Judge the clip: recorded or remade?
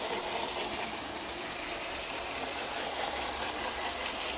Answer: remade